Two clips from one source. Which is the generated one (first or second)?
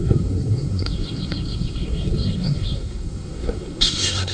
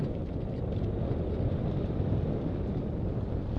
first